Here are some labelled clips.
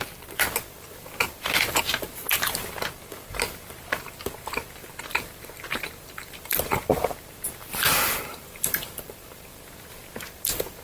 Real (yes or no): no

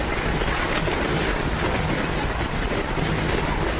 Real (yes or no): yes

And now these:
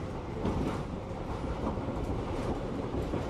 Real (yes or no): no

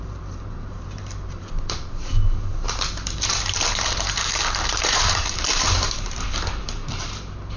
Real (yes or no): no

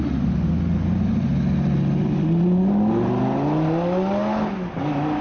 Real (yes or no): yes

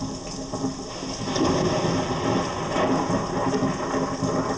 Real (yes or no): yes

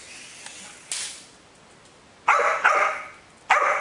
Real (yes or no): yes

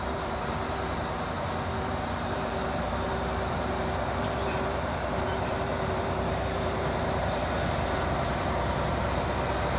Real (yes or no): no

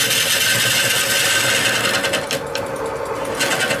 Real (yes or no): yes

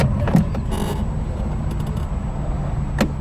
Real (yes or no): yes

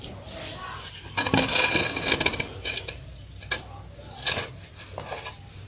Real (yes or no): yes